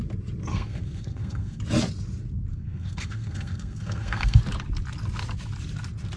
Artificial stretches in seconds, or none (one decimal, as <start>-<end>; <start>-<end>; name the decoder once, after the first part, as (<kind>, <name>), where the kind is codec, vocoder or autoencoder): 0.5-1.6 (codec, SNAC); 2.5-4.4

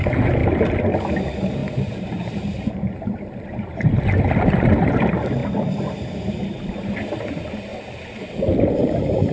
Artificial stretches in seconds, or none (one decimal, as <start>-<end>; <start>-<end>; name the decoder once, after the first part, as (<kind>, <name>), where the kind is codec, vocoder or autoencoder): 0.0-0.4 (vocoder, BigVGAN v2); 1.1-7.7; 8.2-9.3

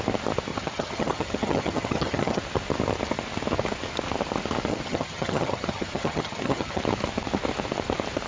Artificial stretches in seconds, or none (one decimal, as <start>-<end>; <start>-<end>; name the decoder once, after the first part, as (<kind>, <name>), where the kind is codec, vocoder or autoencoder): 0.5-2.4 (vocoder, HiFi-GAN); 4.7-6.8

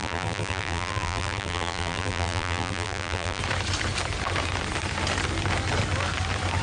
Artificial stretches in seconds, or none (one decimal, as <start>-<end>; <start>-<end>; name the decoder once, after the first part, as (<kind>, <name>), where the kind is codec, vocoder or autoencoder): 0.0-3.4 (vocoder, BigVGAN v2)

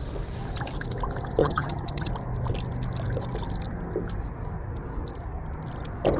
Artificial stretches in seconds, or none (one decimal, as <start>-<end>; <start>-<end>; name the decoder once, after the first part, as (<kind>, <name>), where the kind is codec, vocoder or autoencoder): 1.4-2.1 (vocoder, HiFi-GAN)